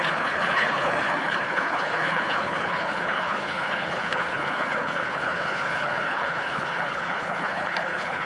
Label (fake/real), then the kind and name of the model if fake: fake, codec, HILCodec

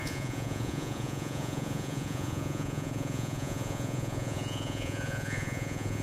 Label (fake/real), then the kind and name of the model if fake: fake, vocoder, Vocos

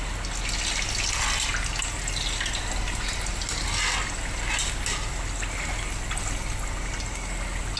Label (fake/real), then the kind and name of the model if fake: real